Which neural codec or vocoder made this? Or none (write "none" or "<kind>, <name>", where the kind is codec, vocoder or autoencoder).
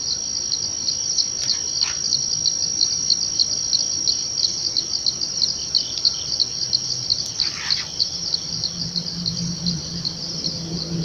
none